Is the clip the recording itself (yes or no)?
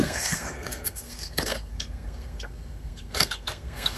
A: no